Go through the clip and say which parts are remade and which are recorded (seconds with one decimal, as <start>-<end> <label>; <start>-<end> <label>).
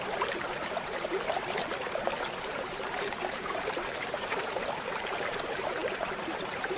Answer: 0.0-1.6 remade; 1.6-2.2 recorded; 2.2-6.8 remade